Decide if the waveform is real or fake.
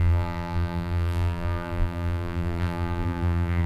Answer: fake